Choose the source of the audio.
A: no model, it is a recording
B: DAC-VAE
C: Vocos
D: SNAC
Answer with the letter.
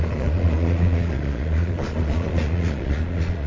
C